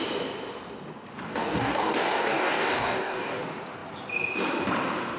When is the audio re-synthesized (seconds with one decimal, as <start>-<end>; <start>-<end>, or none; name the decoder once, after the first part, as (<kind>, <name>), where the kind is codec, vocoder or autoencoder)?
1.3-3.4 (codec, DAC)